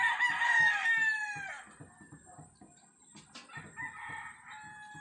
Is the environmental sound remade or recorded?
recorded